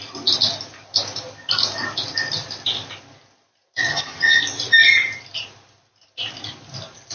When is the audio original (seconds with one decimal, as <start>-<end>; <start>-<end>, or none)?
0.0-3.9; 4.4-7.1